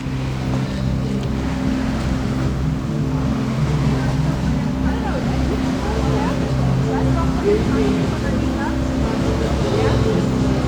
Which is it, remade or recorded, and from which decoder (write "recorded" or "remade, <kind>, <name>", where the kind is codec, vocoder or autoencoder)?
recorded